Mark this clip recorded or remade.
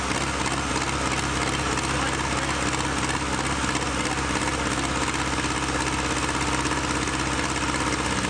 recorded